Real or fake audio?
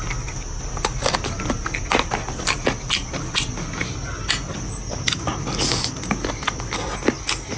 real